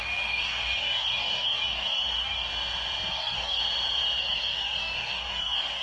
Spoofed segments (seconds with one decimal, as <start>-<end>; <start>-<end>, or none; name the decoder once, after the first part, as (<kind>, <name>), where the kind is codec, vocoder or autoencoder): 0.0-2.5 (codec, DAC); 3.1-3.6; 4.2-5.8